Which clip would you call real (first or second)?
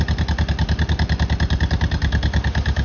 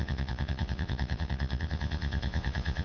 first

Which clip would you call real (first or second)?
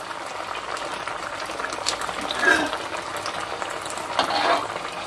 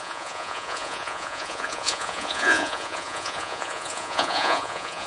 first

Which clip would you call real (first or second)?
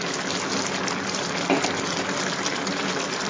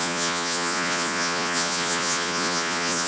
first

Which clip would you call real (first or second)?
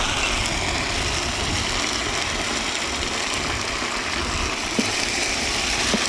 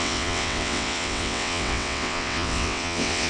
first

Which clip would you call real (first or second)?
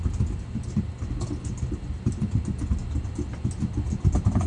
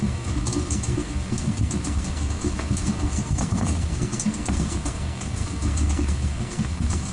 first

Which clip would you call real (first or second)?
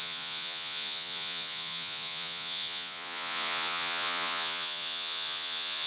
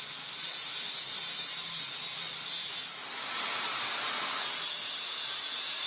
second